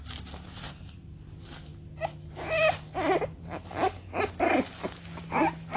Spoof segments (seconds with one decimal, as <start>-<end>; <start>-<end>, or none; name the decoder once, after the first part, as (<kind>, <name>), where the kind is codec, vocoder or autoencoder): none